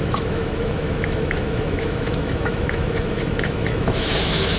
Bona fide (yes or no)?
no